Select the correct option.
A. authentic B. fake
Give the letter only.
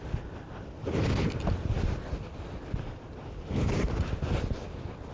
A